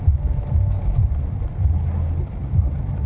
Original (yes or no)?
yes